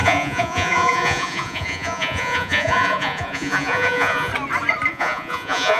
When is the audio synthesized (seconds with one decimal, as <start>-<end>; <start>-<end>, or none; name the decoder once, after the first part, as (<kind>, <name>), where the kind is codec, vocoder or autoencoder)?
0.0-4.3 (vocoder, Vocos); 4.9-5.8